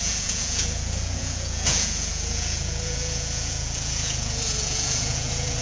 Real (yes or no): no